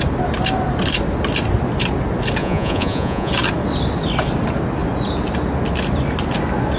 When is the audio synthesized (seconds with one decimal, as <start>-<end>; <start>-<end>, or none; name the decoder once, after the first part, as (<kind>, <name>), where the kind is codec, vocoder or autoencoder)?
2.4-3.3 (vocoder, Vocos)